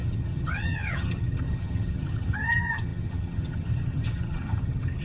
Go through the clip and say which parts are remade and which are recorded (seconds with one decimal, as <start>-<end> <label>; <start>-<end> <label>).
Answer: 0.0-5.0 remade